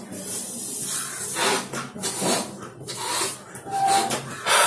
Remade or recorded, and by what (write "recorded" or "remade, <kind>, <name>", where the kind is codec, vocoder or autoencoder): recorded